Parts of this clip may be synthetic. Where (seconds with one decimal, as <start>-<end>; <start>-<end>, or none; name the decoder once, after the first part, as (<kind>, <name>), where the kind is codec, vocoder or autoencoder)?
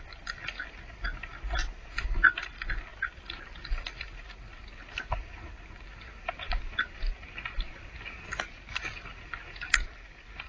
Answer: none